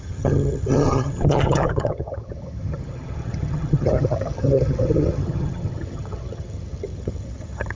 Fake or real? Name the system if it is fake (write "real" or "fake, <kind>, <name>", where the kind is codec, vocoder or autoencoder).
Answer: fake, vocoder, HiFi-GAN